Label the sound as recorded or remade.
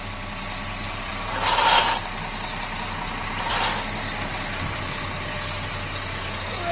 recorded